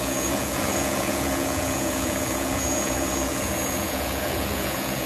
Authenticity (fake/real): fake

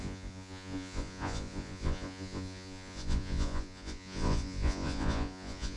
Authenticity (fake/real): fake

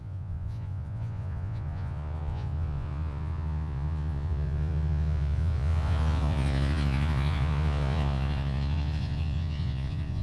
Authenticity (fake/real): fake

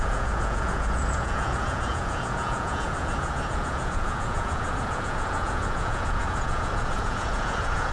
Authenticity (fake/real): fake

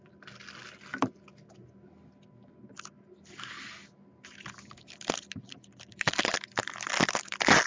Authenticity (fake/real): real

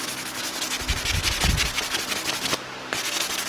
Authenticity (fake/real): real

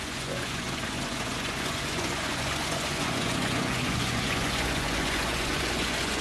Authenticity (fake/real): fake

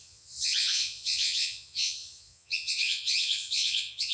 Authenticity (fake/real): fake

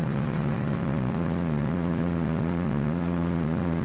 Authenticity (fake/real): fake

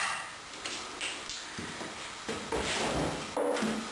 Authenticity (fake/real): real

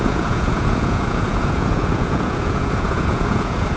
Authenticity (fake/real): fake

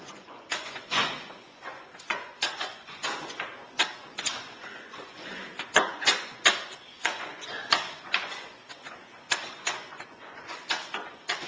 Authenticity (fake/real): fake